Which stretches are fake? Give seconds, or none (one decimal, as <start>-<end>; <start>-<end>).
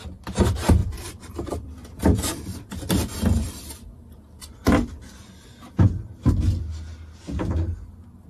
0.8-5.8